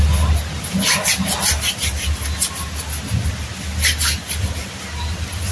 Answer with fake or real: real